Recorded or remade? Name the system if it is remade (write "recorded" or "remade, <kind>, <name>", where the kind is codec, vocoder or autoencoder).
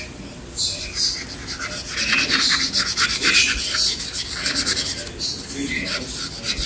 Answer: recorded